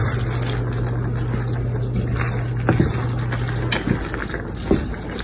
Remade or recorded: recorded